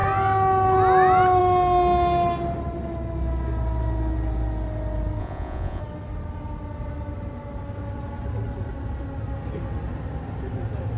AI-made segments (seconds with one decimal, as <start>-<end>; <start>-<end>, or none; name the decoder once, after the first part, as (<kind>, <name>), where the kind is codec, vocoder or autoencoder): 5.2-5.8 (vocoder, Vocos)